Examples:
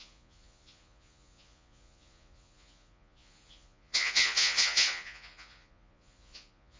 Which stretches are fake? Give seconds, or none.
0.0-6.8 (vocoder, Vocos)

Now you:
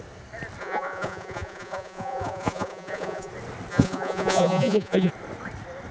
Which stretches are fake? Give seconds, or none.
0.6-3.3 (vocoder, Vocos); 3.7-5.1

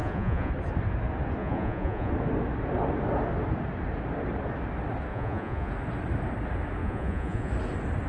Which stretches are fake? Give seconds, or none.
0.0-0.5 (vocoder, Vocos); 1.4-2.1; 5.1-5.7; 6.8-7.5

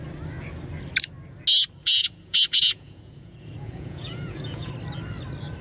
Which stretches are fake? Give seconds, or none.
1.8-4.7 (vocoder, Vocos)